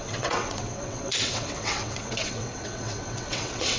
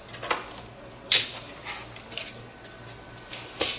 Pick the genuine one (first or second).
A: second